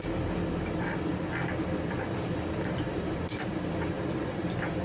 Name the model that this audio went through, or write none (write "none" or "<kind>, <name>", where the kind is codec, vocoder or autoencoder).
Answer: vocoder, BigVGAN v2